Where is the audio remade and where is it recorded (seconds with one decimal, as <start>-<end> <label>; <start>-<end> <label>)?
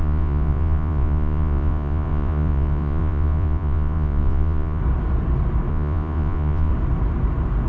0.0-4.8 remade; 4.8-5.7 recorded; 5.7-6.7 remade; 6.7-7.7 recorded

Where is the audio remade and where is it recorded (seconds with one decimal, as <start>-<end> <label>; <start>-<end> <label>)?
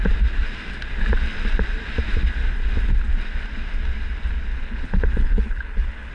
0.0-4.5 recorded; 4.5-6.1 remade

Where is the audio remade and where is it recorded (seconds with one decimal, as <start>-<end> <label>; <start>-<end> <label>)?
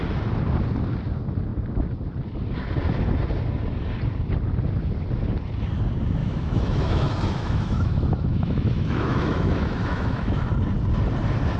0.0-6.2 recorded; 6.2-10.5 remade; 10.5-11.6 recorded